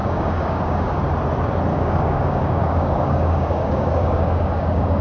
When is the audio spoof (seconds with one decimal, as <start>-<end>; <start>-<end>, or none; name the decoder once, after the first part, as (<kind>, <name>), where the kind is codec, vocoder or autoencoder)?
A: 0.0-1.0 (codec, DAC); 1.7-5.0